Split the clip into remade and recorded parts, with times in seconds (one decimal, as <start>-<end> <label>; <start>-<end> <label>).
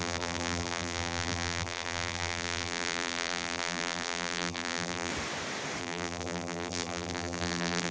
0.0-5.1 remade; 5.1-5.8 recorded; 5.8-7.9 remade